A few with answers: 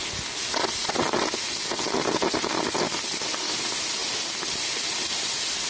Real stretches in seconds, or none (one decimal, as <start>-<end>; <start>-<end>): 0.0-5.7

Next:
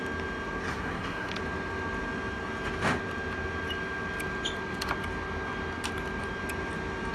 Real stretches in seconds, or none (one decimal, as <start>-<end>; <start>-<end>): 0.0-0.7; 1.3-7.1

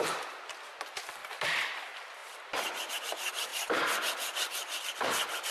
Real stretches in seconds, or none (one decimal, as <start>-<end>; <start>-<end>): 0.0-1.2; 1.8-3.5; 4.8-5.5